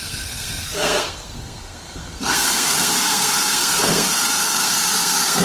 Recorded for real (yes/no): no